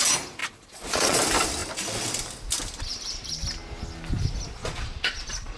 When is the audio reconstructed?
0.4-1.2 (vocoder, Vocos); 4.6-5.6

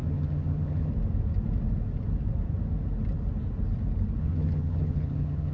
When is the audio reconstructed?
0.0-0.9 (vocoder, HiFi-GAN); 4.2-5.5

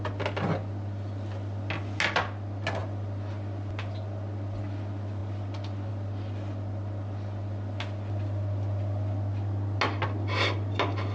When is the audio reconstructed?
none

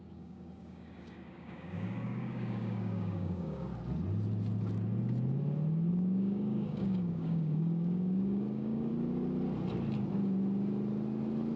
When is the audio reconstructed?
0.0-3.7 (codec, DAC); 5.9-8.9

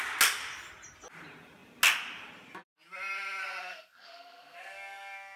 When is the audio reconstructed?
3.4-5.4 (codec, SNAC)